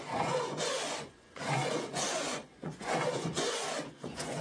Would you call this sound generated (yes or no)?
yes